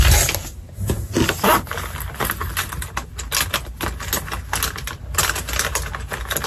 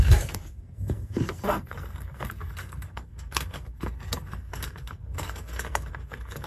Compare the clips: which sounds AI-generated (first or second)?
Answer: second